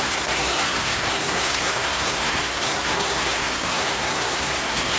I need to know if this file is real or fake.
fake